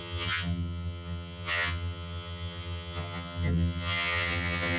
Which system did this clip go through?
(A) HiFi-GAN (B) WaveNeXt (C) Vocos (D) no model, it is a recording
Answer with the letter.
A